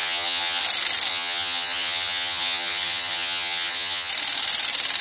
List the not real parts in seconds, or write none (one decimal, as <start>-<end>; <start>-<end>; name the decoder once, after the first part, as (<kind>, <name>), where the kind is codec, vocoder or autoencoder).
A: 0.0-0.6 (vocoder, HiFi-GAN); 1.1-4.1